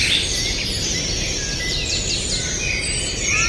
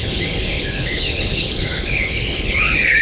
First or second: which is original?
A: first